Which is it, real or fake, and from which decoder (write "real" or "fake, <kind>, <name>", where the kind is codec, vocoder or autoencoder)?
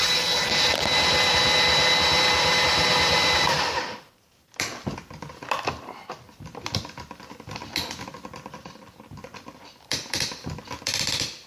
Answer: real